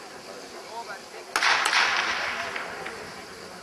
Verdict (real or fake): real